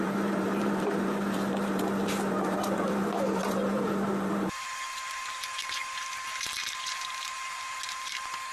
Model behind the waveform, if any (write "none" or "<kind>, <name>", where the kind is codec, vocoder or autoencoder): vocoder, BigVGAN v2